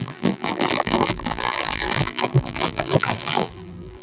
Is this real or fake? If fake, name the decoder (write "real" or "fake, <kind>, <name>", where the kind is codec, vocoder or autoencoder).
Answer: fake, vocoder, BigVGAN v2